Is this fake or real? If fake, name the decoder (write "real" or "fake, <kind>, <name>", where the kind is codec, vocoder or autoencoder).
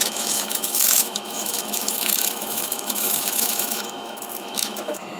fake, autoencoder, DAC-VAE